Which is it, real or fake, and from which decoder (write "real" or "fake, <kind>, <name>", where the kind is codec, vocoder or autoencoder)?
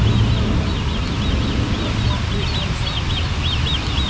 real